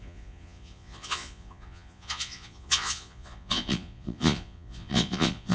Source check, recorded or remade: remade